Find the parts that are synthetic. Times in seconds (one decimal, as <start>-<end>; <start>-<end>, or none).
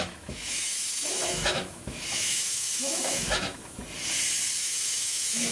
0.0-3.8; 4.6-5.5